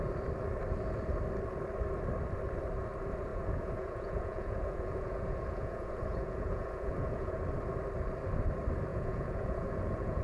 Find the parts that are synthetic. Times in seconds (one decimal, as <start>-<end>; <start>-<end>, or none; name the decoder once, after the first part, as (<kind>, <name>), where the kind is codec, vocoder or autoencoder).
3.3-7.4 (vocoder, Vocos); 8.9-10.2